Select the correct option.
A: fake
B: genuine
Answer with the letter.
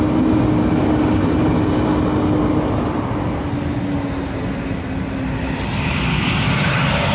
B